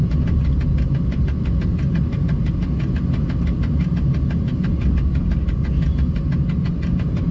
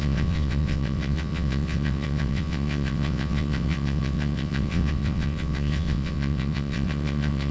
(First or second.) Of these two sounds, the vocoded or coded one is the second